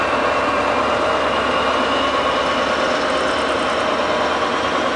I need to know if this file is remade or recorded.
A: recorded